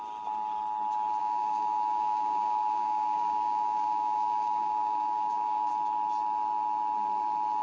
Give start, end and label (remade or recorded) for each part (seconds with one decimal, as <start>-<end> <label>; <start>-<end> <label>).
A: 0.0-1.2 recorded; 1.2-5.7 remade; 5.7-7.6 recorded